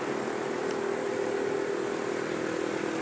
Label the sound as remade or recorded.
recorded